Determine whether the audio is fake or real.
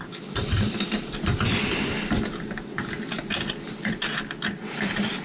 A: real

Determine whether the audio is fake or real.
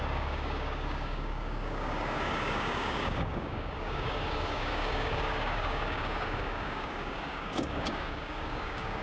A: fake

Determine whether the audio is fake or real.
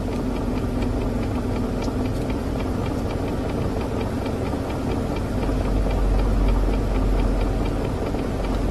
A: real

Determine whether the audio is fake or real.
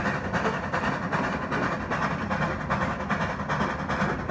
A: real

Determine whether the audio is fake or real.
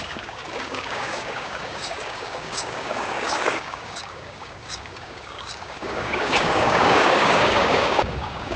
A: fake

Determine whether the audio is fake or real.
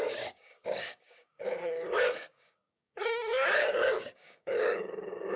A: fake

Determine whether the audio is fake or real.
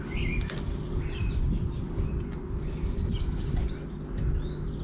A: real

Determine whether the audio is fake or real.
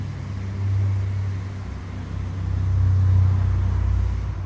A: real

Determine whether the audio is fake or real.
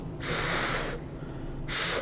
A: real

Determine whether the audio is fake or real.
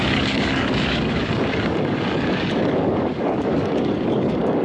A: fake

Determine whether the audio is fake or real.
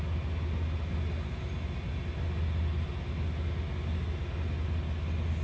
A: real